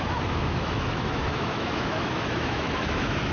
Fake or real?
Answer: fake